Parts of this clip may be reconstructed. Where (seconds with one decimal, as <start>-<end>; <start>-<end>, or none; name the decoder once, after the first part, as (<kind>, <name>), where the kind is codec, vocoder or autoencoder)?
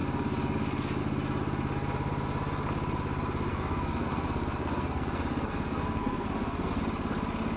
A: 3.5-6.8 (codec, SNAC)